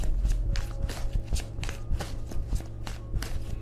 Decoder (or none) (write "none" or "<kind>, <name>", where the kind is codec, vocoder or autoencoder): none